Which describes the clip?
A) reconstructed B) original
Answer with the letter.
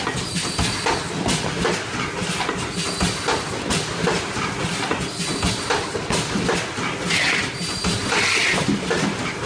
B